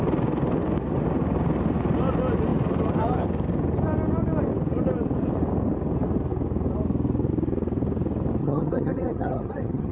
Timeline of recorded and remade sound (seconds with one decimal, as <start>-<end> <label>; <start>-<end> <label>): 0.0-8.4 recorded; 8.4-9.9 remade